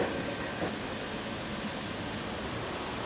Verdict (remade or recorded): recorded